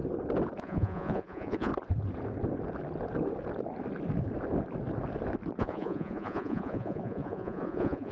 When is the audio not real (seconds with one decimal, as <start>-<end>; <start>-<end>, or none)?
0.6-1.7; 5.6-8.1